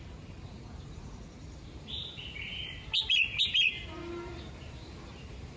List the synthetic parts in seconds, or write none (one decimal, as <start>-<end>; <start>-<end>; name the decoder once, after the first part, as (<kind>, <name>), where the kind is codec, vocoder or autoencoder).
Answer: 0.0-2.9 (vocoder, BigVGAN v2); 3.4-5.6